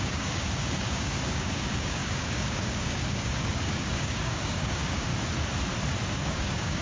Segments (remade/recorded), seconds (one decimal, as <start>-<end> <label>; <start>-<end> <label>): 0.0-5.1 remade; 5.1-6.1 recorded; 6.1-6.8 remade